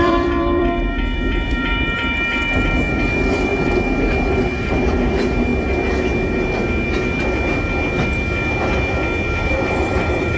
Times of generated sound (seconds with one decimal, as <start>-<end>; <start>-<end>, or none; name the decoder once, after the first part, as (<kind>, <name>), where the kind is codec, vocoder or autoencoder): 0.0-3.5 (vocoder, BigVGAN v2); 4.3-5.5; 9.4-10.4

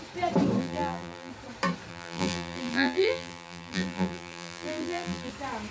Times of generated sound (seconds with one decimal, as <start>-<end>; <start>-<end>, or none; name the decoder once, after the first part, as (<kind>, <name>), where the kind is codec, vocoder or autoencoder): 0.6-1.3 (vocoder, BigVGAN v2); 1.9-5.3

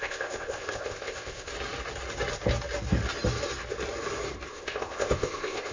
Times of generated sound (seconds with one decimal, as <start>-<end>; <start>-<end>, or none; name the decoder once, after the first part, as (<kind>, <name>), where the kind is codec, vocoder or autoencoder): 0.0-1.5 (codec, ZipCodec); 4.5-5.7

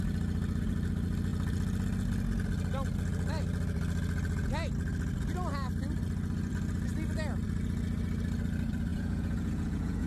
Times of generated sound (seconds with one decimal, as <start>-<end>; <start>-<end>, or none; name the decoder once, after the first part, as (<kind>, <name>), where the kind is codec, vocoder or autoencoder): 8.9-10.1 (vocoder, Vocos)

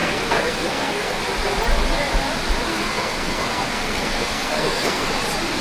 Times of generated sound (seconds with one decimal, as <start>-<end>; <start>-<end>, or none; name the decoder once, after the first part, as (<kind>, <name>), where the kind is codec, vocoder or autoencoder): 0.0-1.2 (codec, SNAC); 2.7-5.1

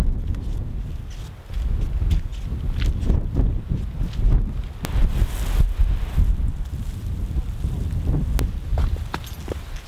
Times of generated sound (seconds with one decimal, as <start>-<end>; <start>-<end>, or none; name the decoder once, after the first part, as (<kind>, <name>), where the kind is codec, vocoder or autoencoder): none

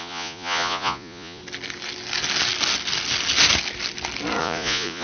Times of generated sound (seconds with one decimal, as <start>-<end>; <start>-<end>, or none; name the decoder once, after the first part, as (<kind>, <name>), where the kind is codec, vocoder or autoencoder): 0.0-1.4 (vocoder, Vocos); 4.4-5.0